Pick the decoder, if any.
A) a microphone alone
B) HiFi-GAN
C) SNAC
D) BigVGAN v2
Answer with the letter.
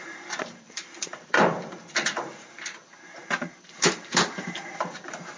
D